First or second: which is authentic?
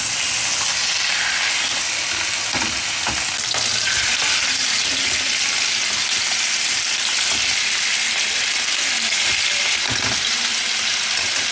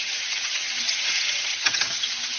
first